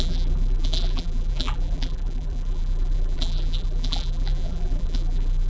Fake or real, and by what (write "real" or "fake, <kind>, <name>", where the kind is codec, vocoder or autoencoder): fake, vocoder, BigVGAN v2